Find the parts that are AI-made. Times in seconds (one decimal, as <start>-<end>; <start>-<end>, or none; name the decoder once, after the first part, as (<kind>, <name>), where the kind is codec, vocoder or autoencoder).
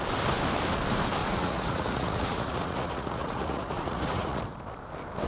1.2-4.4 (vocoder, Vocos)